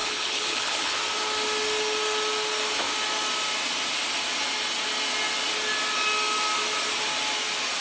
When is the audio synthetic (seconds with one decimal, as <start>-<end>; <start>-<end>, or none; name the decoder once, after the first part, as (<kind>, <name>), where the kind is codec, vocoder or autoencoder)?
0.0-1.0 (codec, HILCodec)